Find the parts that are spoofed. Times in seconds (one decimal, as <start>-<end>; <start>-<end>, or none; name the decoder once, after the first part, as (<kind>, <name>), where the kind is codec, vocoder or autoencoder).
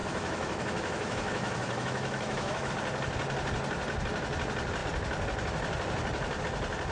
0.0-2.7 (autoencoder, DAC-VAE)